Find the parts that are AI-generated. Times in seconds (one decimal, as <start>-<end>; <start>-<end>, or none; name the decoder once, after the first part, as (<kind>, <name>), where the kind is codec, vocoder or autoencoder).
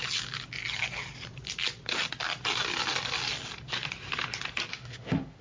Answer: 4.7-5.4 (autoencoder, DAC-VAE)